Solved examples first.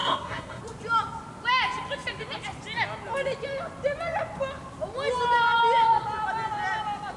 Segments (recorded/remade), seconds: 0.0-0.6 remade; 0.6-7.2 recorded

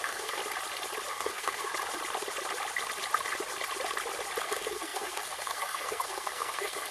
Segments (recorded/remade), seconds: 0.0-0.4 remade; 0.4-1.1 recorded; 1.1-1.7 remade; 1.7-4.4 recorded; 4.4-6.9 remade